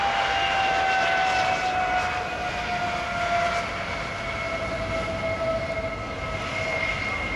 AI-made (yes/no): no